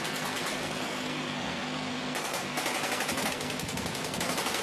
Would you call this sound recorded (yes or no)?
no